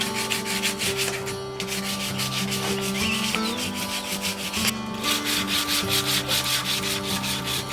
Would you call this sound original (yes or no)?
yes